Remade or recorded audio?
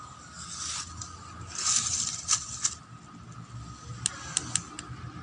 recorded